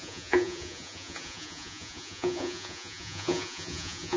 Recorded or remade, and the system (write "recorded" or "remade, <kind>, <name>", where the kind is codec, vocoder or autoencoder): remade, vocoder, Vocos